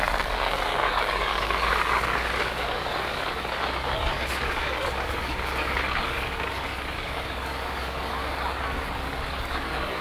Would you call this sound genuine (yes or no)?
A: no